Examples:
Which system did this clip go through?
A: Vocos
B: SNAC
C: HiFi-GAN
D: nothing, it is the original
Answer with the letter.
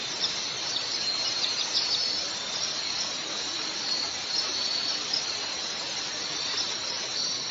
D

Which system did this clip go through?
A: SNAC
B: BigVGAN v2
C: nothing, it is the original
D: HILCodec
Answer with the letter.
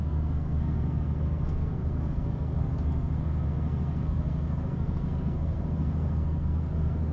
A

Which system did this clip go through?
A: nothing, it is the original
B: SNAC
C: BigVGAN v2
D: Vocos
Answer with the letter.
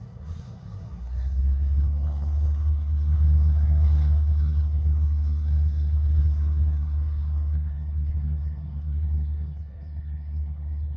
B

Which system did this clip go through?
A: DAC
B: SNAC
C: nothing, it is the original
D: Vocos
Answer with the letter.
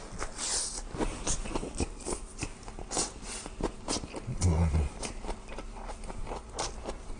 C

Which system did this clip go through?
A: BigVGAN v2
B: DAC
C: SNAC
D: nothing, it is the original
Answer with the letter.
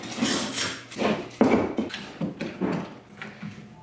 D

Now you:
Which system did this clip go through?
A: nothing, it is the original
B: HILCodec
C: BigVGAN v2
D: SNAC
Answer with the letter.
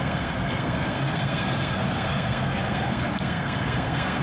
D